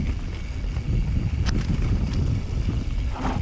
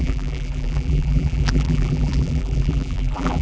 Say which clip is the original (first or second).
first